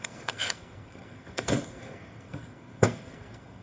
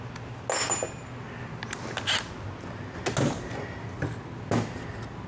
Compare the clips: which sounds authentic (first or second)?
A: second